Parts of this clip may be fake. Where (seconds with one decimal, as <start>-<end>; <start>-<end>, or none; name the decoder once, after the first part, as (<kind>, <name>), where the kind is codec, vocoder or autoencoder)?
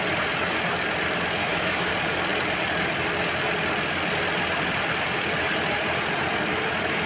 1.4-1.9 (autoencoder, DAC-VAE)